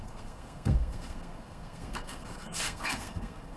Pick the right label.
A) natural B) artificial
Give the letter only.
B